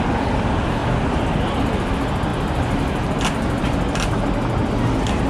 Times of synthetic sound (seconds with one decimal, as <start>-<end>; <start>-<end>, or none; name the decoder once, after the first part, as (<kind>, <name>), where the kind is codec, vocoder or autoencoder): none